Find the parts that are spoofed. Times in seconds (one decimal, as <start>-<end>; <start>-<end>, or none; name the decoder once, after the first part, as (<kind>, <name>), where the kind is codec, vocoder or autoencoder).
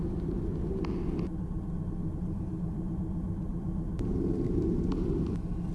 0.0-0.5 (vocoder, BigVGAN v2); 1.6-5.7